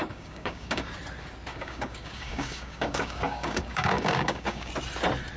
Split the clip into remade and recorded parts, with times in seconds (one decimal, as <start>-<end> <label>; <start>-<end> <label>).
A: 0.0-0.9 remade; 0.9-1.5 recorded; 1.5-4.7 remade; 4.7-5.4 recorded